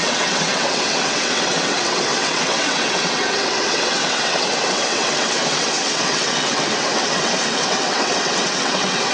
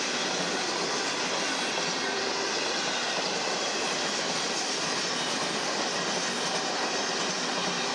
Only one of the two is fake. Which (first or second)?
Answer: first